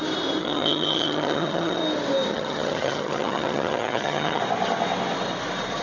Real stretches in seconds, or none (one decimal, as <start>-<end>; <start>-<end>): 0.0-0.4; 1.8-2.3; 4.4-5.8

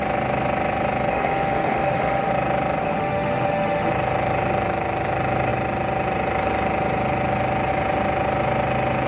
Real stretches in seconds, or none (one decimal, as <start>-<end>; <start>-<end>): 0.0-1.1; 2.3-2.8; 3.9-9.1

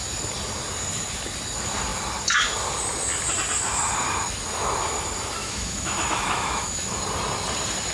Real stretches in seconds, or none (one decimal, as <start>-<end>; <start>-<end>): 0.0-5.4; 7.0-7.9

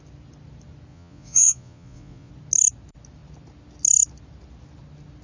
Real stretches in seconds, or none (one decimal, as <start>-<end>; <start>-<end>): 0.0-0.9; 2.3-5.2

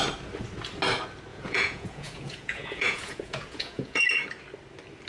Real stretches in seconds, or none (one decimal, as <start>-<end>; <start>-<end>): 0.0-1.3; 4.0-5.1

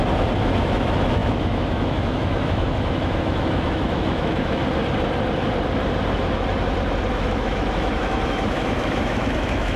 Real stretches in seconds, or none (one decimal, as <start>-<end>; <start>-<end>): 0.0-0.6; 4.6-7.1